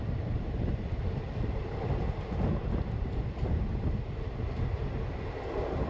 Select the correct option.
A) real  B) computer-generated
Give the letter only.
A